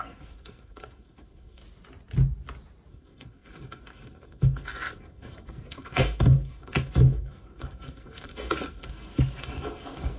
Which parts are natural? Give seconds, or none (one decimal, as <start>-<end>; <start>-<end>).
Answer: 1.6-2.9